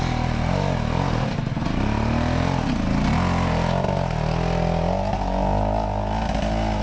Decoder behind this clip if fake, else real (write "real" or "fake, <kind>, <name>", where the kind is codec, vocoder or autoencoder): real